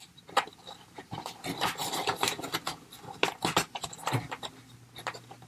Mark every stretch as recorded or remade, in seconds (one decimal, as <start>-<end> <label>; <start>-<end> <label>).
0.0-5.5 recorded